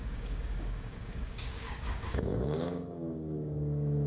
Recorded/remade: remade